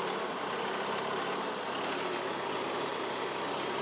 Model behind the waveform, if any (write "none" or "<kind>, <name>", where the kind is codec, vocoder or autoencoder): none